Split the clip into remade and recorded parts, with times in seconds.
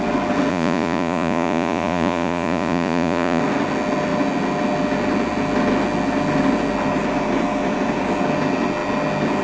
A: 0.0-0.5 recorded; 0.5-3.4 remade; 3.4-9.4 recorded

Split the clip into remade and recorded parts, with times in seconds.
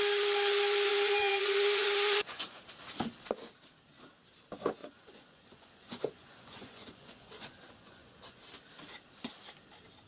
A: 0.0-0.9 recorded; 0.9-2.6 remade; 2.6-4.8 recorded; 4.8-8.4 remade; 8.4-10.1 recorded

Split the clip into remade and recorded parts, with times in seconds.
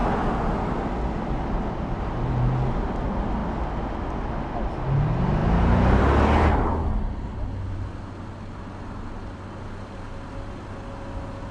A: 0.0-11.5 recorded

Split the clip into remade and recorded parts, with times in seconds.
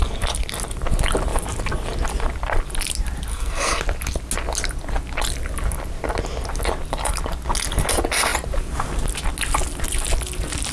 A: 0.0-3.3 recorded; 3.3-3.8 remade; 3.8-10.7 recorded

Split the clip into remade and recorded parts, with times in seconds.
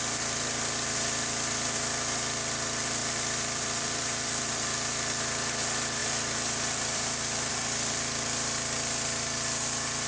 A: 0.0-3.0 recorded; 3.0-4.4 remade; 4.4-6.0 recorded; 6.0-7.5 remade; 7.5-10.1 recorded